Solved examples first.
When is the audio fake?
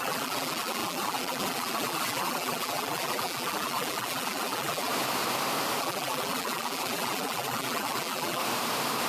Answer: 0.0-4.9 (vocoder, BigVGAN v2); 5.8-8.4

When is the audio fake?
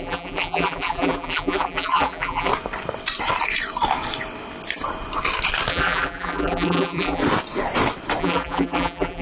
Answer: 0.0-2.5 (vocoder, BigVGAN v2); 5.7-7.2; 8.2-9.2